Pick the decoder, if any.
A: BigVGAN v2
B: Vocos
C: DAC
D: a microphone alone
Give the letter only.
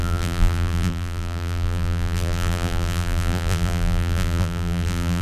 A